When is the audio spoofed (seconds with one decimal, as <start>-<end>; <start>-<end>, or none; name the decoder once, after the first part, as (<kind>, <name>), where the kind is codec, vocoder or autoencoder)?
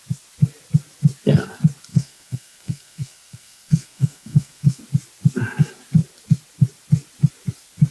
1.9-4.8 (codec, SNAC)